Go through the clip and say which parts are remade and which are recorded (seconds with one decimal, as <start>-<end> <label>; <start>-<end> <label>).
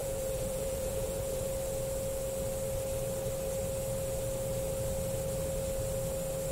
0.0-1.5 remade; 1.5-6.5 recorded